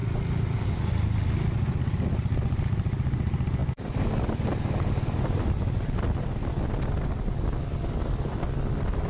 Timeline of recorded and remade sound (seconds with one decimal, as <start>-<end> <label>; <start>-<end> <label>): 0.0-9.1 recorded